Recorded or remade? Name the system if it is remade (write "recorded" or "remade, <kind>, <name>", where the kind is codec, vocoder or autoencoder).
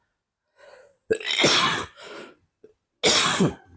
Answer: recorded